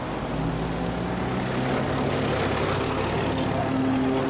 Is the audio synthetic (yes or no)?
no